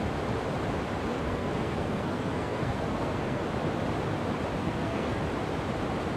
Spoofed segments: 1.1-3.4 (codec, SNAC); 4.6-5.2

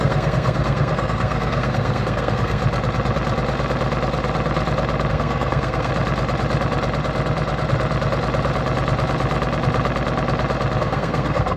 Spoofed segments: 0.0-2.6 (codec, SNAC); 5.1-5.9; 10.8-11.6